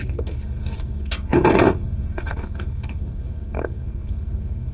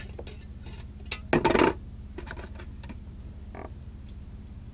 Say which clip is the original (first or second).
second